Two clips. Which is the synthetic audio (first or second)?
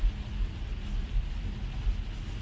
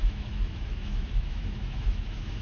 second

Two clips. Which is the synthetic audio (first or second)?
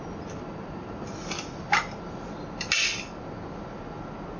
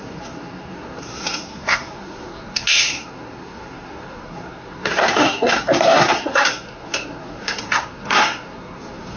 second